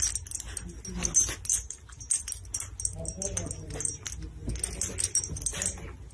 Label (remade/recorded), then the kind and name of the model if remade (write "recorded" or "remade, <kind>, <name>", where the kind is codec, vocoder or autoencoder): recorded